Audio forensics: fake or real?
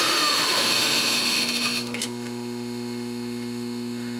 fake